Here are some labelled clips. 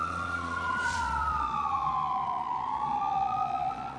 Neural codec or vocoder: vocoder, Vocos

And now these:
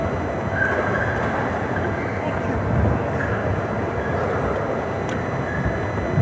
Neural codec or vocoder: none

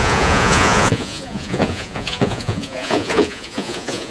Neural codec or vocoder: vocoder, Vocos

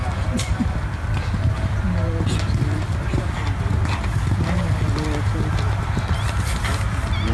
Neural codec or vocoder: none